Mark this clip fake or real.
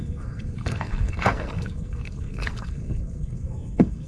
fake